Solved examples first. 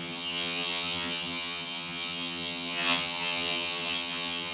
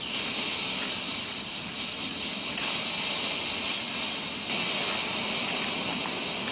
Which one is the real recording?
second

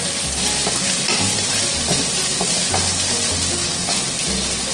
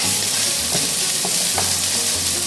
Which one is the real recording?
first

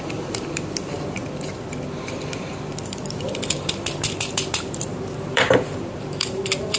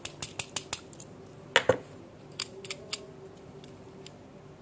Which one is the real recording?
second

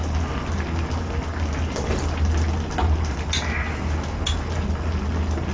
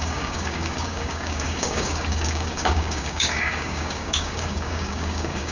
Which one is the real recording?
first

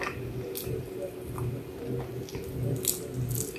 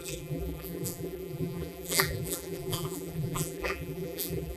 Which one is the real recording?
first